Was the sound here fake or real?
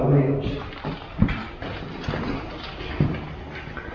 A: real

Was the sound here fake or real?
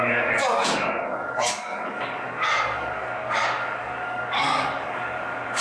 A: fake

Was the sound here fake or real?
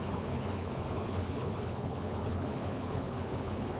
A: fake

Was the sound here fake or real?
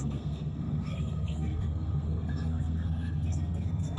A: fake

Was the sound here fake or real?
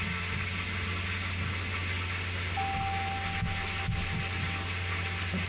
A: real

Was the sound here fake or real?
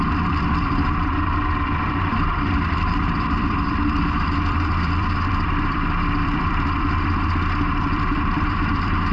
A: fake